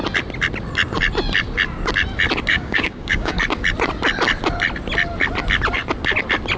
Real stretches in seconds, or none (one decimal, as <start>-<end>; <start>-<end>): 0.0-2.5; 3.4-6.6